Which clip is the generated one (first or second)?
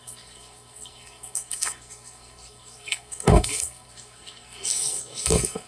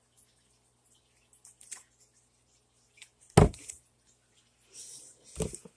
first